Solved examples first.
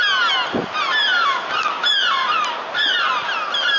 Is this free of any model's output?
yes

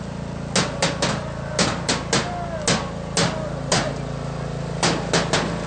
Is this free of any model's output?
yes